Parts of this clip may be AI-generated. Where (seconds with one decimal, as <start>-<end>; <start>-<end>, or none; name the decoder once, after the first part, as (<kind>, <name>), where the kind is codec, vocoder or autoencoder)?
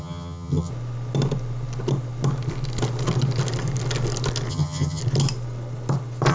0.0-0.7 (vocoder, HiFi-GAN); 4.5-5.0